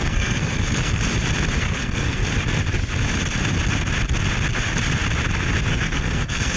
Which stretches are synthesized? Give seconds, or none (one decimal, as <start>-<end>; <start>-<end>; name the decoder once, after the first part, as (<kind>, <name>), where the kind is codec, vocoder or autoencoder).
0.0-1.0 (codec, SNAC); 1.6-2.2; 5.7-6.6